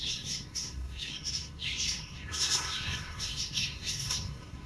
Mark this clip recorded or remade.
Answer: remade